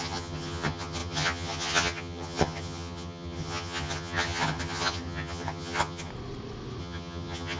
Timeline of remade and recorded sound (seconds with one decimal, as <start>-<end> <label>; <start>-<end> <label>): 0.0-6.1 remade; 6.1-6.8 recorded; 6.8-7.6 remade